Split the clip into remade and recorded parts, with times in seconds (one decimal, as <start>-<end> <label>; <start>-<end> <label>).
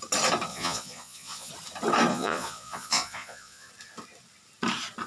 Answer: 0.0-0.5 recorded; 0.5-1.5 remade; 1.5-2.1 recorded; 2.1-3.7 remade; 3.7-5.1 recorded